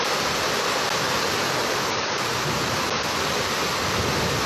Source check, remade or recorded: recorded